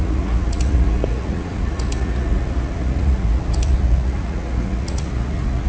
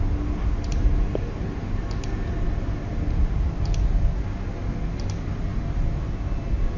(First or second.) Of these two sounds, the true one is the second